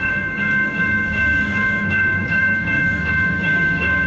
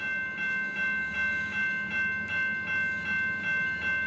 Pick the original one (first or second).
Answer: second